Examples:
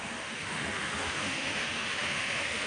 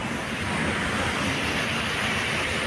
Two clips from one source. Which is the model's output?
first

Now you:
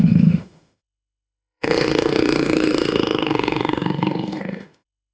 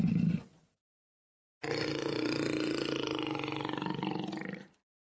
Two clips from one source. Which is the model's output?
first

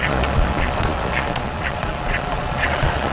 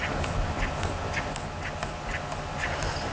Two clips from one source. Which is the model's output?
first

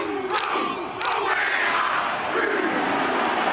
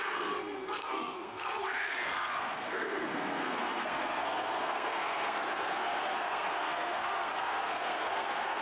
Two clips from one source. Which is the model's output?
second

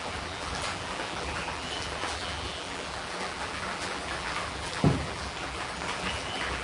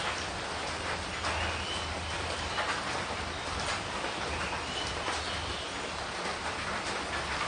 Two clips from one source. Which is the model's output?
first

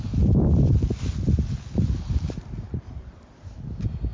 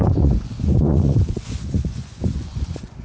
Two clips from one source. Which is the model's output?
second